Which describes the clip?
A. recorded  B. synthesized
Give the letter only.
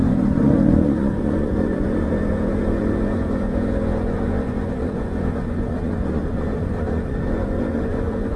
B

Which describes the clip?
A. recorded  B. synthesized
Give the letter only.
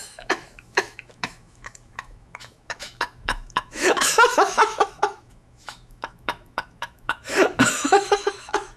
B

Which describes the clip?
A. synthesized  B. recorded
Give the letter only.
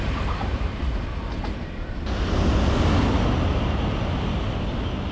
B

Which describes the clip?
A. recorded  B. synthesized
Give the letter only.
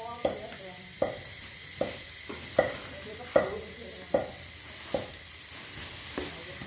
B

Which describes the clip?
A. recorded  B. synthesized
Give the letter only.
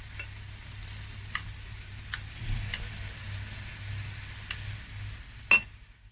A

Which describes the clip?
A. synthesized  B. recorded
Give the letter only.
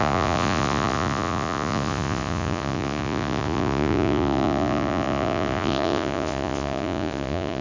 A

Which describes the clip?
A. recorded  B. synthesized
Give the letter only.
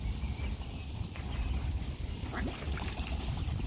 A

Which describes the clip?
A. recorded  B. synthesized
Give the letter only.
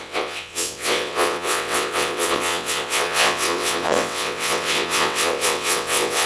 B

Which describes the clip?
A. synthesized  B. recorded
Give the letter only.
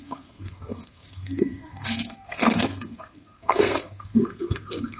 A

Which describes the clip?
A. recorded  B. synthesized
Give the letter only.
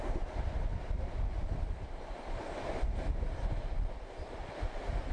A